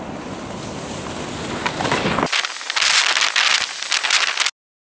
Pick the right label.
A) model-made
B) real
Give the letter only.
B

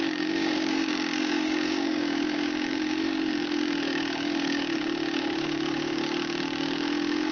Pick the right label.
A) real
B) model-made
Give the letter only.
B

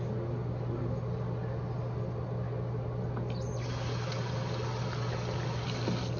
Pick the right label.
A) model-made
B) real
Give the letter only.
B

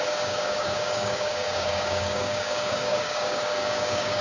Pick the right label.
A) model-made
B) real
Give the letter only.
A